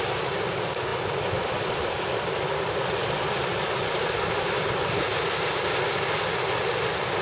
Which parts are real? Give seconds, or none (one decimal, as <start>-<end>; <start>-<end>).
0.0-7.2